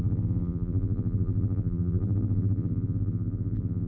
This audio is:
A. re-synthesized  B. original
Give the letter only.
A